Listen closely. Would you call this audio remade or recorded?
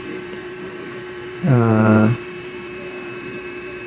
remade